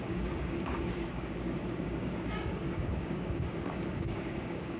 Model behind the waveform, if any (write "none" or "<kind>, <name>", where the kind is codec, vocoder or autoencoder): codec, DAC